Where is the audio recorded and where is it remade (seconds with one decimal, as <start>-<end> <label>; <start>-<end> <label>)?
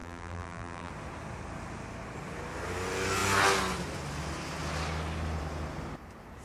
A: 0.0-0.9 remade; 0.9-6.4 recorded